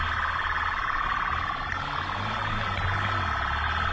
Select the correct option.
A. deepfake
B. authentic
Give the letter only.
B